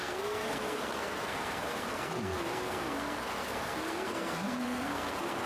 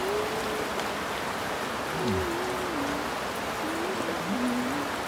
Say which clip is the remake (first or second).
first